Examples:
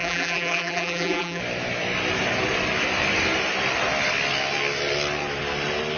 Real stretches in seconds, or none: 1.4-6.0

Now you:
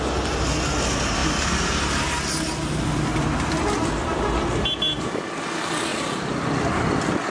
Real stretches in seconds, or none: 0.0-7.3

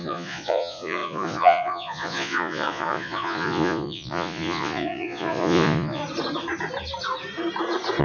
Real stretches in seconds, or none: 6.0-8.0

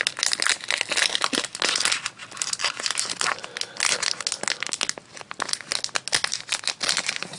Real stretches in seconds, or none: 0.0-7.4

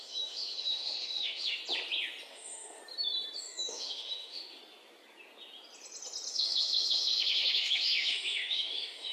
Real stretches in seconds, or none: 1.6-2.3; 2.8-3.4; 4.6-6.3

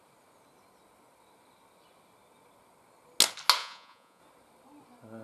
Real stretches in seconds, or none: 0.0-3.6; 4.2-5.2